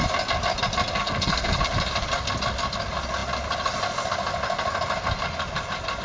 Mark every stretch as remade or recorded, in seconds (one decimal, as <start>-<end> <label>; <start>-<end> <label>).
0.0-1.0 recorded; 1.0-1.6 remade; 1.6-6.0 recorded